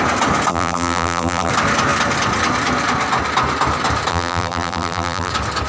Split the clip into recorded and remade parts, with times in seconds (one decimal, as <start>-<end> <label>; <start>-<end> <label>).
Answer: 0.0-0.5 recorded; 0.5-1.5 remade; 1.5-4.1 recorded; 4.1-5.3 remade; 5.3-5.7 recorded